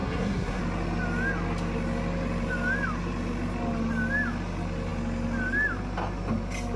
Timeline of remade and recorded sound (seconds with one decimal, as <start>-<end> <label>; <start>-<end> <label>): 0.0-0.6 remade; 0.6-6.8 recorded